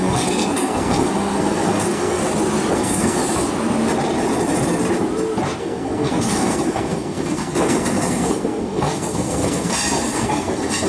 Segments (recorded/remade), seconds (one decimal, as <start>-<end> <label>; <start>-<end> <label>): 0.0-2.2 remade; 2.2-2.7 recorded; 2.7-3.2 remade; 3.2-5.6 recorded; 5.6-10.9 remade